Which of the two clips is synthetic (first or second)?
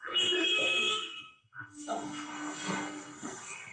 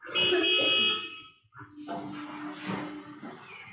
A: first